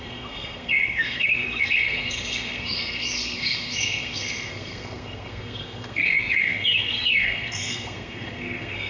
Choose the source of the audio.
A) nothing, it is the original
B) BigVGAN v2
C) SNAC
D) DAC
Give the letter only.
C